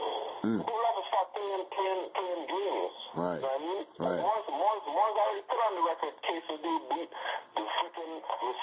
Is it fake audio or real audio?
real